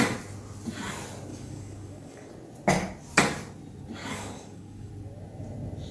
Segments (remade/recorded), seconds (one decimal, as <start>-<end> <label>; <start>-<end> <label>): 0.0-1.3 recorded; 1.3-2.3 remade; 2.3-4.0 recorded; 4.0-4.9 remade; 4.9-5.9 recorded